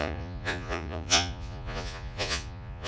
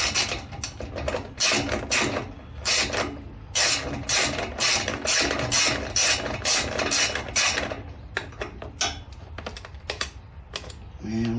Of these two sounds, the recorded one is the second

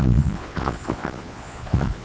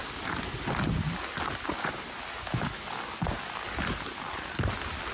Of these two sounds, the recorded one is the second